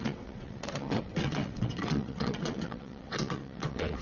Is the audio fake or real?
fake